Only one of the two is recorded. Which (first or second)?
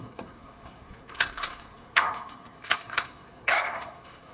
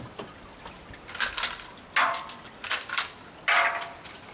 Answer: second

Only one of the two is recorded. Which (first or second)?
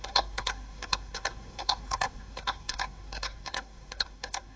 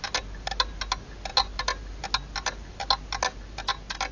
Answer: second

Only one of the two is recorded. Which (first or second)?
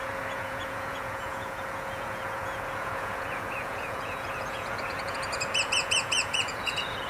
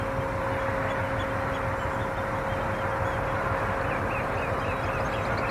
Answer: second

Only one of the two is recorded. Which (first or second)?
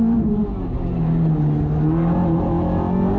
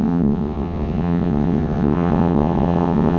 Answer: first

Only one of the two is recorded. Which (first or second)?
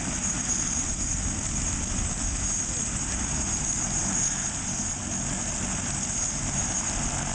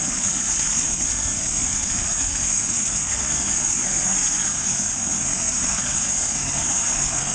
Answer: first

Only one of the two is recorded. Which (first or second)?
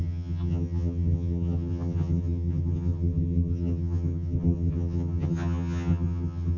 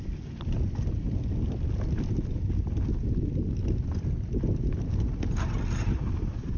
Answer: second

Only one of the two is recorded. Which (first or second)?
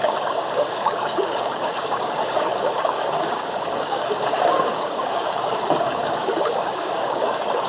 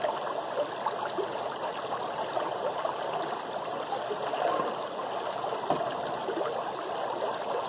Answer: second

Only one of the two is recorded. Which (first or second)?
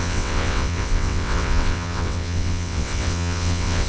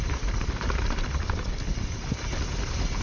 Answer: second